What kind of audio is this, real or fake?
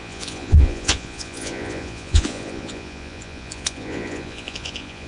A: fake